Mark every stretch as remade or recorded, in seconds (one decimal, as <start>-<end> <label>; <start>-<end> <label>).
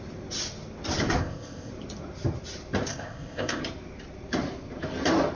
0.0-1.2 recorded; 1.2-1.7 remade; 1.7-2.9 recorded; 2.9-3.6 remade; 3.6-5.4 recorded